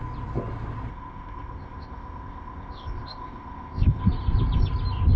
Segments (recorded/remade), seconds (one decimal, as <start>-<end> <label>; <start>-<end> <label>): 0.0-0.9 recorded; 0.9-4.0 remade; 4.0-5.2 recorded